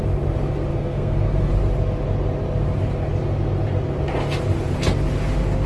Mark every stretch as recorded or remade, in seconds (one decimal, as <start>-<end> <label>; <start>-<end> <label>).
0.0-0.7 recorded; 0.7-1.5 remade; 1.5-5.7 recorded